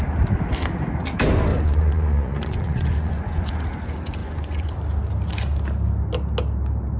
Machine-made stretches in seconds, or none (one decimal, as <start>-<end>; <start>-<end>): 1.5-3.5; 4.2-4.7